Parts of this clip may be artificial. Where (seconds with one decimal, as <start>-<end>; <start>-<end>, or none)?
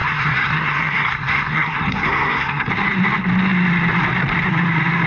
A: 0.0-2.7